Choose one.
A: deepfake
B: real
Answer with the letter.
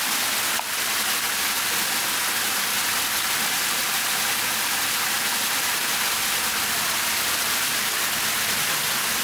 B